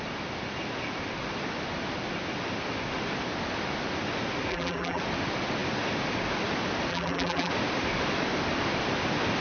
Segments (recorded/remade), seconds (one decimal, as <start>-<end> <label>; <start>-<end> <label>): 0.0-4.5 recorded; 4.5-5.0 remade; 5.0-6.9 recorded; 6.9-7.5 remade; 7.5-9.4 recorded